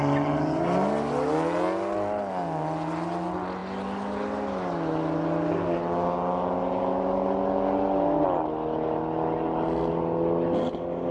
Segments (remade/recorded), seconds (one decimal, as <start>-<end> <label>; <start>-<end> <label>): 0.0-11.1 recorded